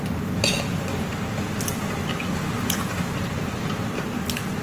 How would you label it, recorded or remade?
recorded